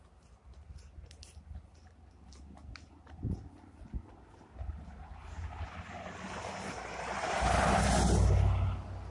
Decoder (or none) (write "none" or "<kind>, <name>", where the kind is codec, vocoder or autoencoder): none